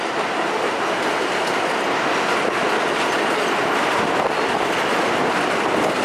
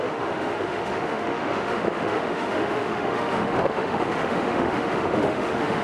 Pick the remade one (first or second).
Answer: second